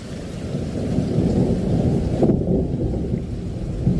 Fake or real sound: real